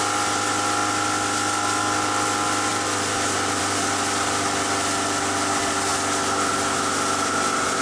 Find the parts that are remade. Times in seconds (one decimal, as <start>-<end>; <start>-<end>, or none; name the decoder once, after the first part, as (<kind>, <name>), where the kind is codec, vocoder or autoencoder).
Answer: 2.7-3.6 (vocoder, BigVGAN v2)